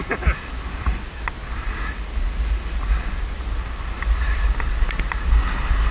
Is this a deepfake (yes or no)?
no